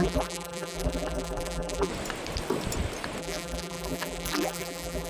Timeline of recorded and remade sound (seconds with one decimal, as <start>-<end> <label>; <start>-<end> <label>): 0.0-1.9 remade; 1.9-3.2 recorded; 3.2-5.1 remade